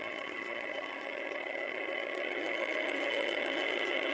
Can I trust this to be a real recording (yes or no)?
no